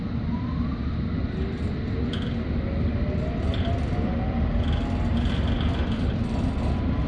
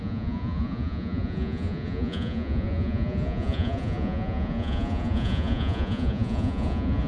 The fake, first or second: second